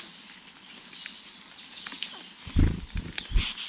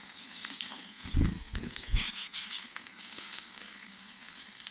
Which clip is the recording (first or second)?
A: first